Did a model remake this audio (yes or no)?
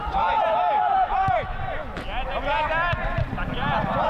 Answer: no